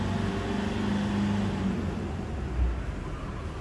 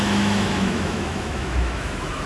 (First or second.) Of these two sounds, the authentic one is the first